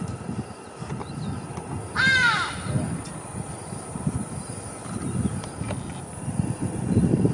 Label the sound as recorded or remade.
recorded